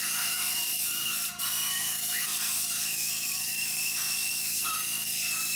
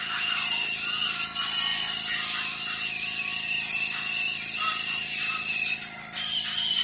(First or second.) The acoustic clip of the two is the second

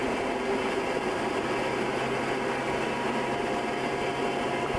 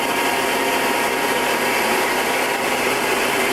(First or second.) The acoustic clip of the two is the first